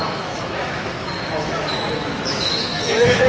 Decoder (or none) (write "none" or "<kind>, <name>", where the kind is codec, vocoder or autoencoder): autoencoder, DAC-VAE